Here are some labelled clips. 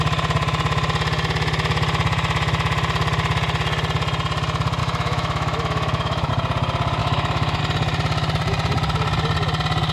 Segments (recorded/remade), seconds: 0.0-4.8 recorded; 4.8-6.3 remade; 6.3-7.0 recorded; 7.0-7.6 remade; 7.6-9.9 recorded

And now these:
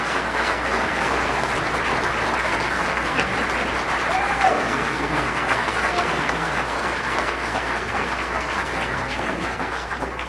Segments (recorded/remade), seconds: 0.0-1.5 remade; 1.5-2.4 recorded; 2.4-3.3 remade; 3.3-4.3 recorded; 4.3-10.3 remade

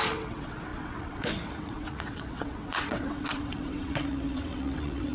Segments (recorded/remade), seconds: 0.0-5.1 remade

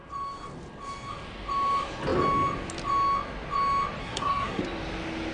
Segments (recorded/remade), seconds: 0.0-4.0 recorded; 4.0-4.6 remade; 4.6-5.3 recorded

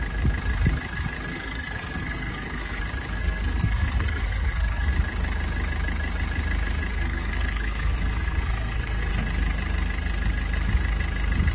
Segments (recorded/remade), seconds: 0.0-1.3 recorded; 1.3-2.8 remade; 2.8-3.2 recorded; 3.2-4.9 remade; 4.9-6.9 recorded; 6.9-9.1 remade; 9.1-11.5 recorded

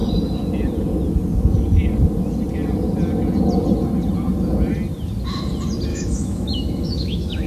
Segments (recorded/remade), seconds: 0.0-5.9 recorded; 5.9-7.5 remade